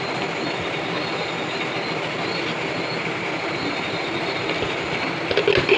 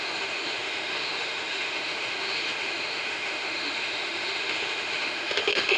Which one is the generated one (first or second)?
second